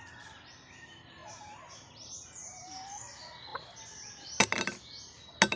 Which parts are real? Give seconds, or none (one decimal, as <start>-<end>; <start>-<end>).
0.0-1.2; 2.1-5.6